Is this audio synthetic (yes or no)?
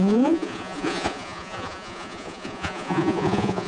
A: yes